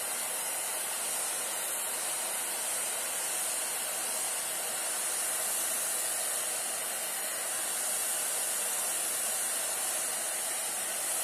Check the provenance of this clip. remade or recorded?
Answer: recorded